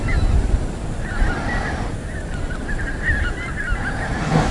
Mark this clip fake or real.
real